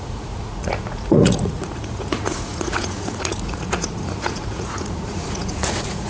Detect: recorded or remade remade